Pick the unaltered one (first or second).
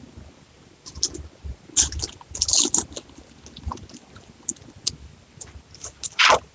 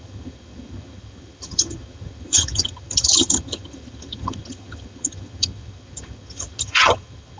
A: first